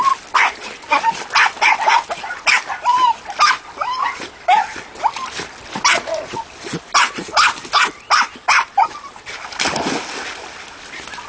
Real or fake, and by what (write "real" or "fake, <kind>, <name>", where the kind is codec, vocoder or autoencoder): real